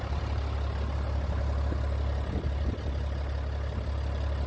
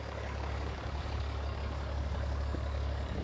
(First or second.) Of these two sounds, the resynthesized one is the second